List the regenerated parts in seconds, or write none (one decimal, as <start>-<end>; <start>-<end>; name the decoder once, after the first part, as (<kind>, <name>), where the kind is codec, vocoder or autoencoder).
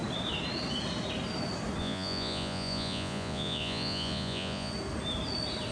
1.8-4.7 (vocoder, Vocos)